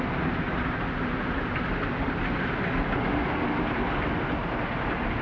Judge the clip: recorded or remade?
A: recorded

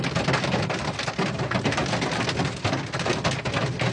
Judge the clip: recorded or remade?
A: recorded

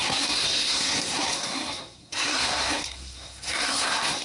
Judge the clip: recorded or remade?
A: remade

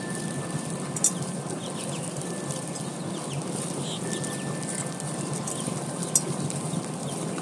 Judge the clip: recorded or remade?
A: recorded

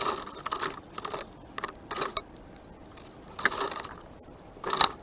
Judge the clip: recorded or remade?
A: recorded